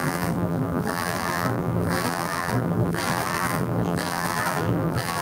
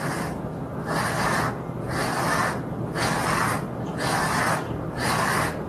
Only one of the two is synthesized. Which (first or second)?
first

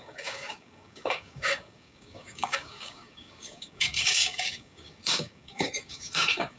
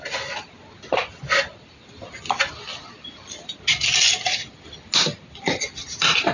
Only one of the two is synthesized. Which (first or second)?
first